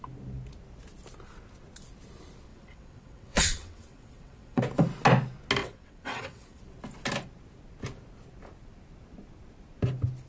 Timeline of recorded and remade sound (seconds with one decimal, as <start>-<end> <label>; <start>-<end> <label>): 0.0-2.5 recorded; 2.5-4.6 remade; 4.6-5.6 recorded; 5.6-6.6 remade; 6.6-10.3 recorded